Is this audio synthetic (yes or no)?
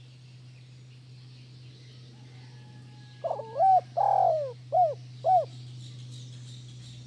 no